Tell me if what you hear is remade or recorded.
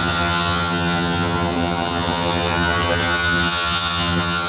remade